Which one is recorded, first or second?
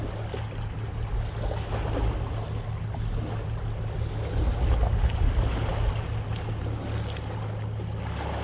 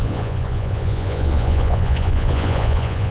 first